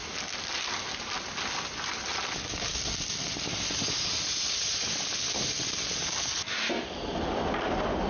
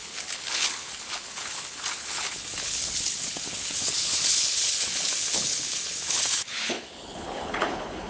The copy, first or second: second